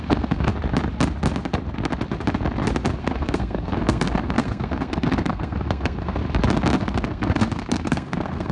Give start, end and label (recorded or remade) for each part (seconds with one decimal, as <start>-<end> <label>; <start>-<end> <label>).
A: 0.0-0.5 remade; 0.5-3.0 recorded; 3.0-6.2 remade; 6.2-6.8 recorded; 6.8-8.5 remade